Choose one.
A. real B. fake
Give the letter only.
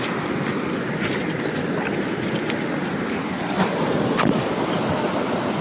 A